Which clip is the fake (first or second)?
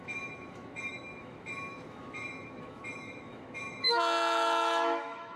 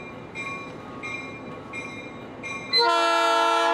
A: first